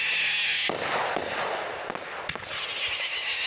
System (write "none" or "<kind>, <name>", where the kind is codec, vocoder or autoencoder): none